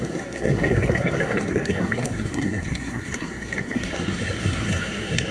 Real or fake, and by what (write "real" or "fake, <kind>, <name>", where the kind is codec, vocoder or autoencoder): fake, codec, SNAC